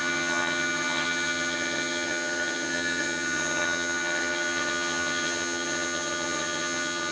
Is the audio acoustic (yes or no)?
no